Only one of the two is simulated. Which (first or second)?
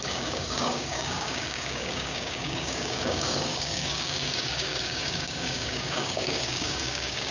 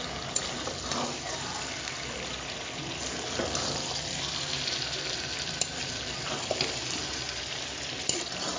first